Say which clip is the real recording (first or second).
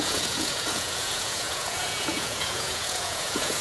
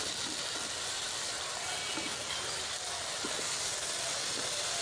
second